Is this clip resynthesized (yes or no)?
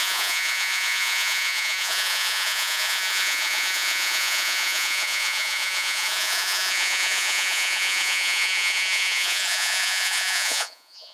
yes